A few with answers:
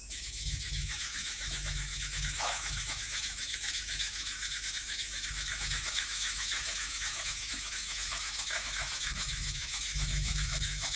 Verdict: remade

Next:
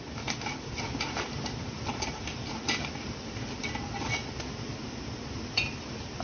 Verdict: recorded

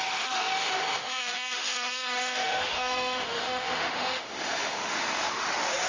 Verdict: remade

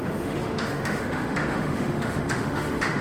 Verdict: remade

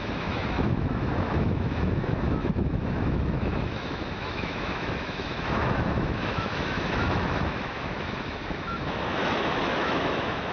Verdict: remade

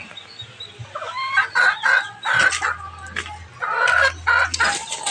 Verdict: recorded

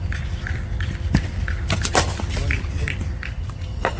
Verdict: recorded